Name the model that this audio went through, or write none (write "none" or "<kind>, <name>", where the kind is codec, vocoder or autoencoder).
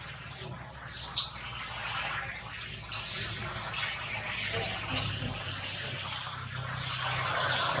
none